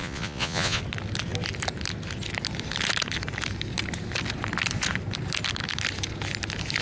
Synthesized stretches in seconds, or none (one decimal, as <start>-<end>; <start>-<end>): 0.0-0.8